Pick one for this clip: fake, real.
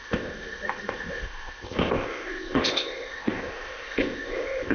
fake